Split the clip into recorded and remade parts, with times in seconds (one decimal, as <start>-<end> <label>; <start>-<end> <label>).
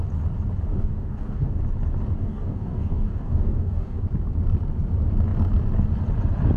0.0-0.7 recorded; 0.7-1.6 remade; 1.6-2.2 recorded; 2.2-4.0 remade; 4.0-6.6 recorded